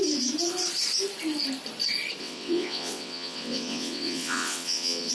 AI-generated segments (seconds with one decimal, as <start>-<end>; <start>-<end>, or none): 2.2-5.1